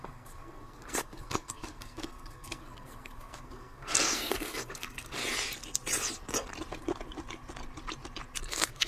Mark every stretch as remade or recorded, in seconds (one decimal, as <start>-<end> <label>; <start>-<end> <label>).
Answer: 0.0-5.2 remade; 5.2-8.4 recorded; 8.4-8.9 remade